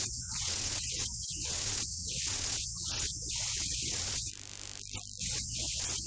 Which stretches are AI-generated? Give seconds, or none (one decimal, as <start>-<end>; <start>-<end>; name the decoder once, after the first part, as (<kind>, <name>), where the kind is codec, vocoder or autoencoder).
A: 0.0-4.3 (vocoder, WaveNeXt); 5.2-6.1